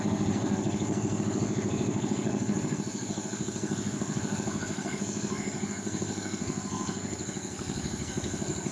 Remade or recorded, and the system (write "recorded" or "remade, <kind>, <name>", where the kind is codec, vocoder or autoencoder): remade, codec, SNAC